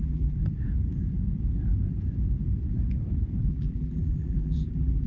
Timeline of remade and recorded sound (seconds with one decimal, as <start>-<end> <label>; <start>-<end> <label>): 0.0-0.4 remade; 0.4-3.5 recorded; 3.5-5.1 remade